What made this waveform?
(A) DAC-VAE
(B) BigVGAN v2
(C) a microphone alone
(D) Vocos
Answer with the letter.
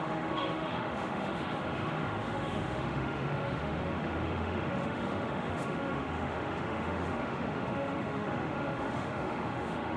A